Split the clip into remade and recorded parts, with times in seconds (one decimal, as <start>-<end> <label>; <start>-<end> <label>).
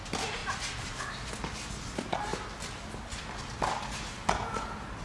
0.0-5.0 recorded